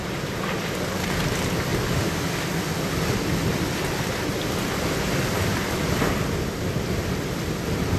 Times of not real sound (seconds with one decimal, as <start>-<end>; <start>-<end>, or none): none